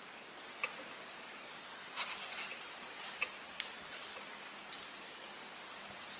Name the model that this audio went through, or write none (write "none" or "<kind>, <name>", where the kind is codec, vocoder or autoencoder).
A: none